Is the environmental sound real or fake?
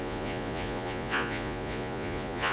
fake